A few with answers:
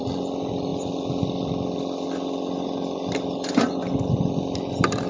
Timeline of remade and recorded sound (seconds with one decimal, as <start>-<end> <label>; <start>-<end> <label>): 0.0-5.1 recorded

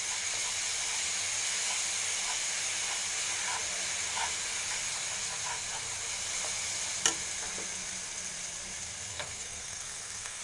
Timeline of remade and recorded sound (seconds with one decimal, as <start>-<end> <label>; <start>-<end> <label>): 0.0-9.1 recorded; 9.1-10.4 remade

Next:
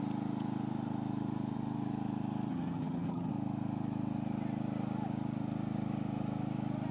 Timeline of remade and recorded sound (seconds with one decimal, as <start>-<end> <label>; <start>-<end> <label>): 0.0-2.5 recorded; 2.5-3.3 remade; 3.3-6.9 recorded

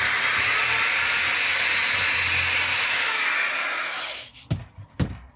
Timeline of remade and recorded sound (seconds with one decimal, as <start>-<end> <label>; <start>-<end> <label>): 0.0-2.7 recorded; 2.7-3.2 remade; 3.2-3.8 recorded; 3.8-4.4 remade; 4.4-5.4 recorded